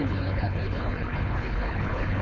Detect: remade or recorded remade